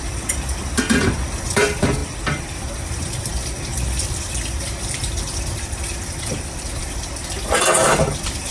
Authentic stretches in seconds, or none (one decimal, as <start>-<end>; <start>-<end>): none